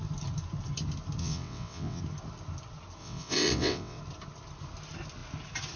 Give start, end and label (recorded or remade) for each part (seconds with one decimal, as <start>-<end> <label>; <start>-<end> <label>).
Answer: 0.0-1.2 recorded; 1.2-2.0 remade; 2.0-3.0 recorded; 3.0-4.0 remade; 4.0-5.8 recorded